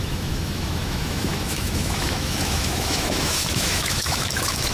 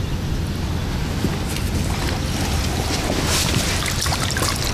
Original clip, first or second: second